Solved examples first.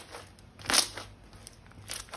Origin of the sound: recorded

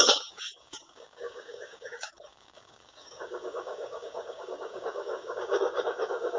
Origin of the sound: remade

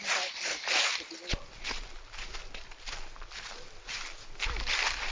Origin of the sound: recorded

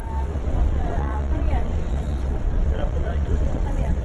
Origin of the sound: remade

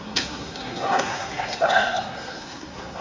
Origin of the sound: remade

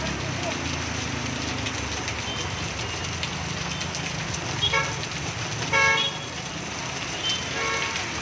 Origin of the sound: recorded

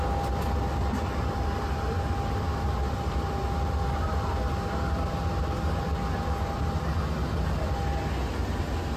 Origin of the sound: recorded